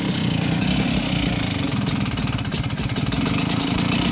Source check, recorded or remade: recorded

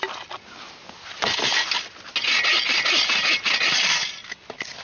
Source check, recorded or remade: recorded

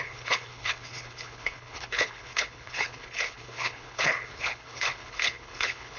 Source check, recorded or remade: remade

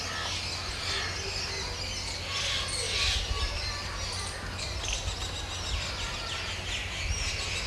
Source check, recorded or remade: recorded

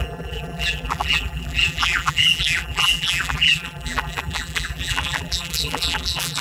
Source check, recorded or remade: remade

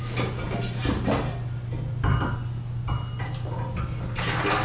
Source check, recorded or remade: recorded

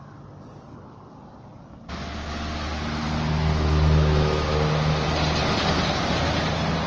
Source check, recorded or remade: recorded